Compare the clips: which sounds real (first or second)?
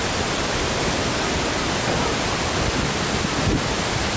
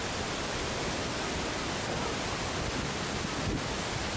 second